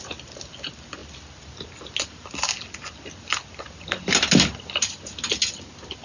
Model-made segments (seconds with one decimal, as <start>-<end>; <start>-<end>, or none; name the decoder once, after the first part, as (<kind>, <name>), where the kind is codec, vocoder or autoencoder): none